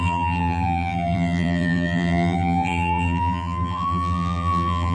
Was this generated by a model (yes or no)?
yes